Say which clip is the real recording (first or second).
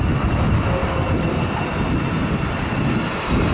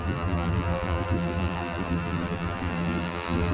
first